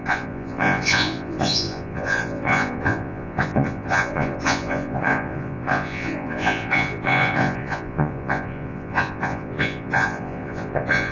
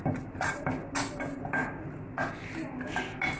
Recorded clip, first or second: second